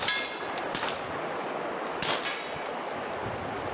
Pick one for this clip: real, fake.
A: real